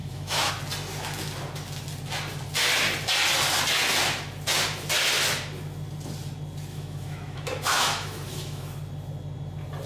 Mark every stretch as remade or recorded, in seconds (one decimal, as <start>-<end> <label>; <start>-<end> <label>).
0.0-0.5 remade; 0.5-6.7 recorded; 6.7-8.7 remade; 8.7-9.9 recorded